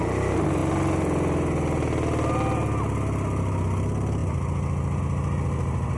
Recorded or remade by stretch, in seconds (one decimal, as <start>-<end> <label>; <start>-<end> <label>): 0.0-6.0 recorded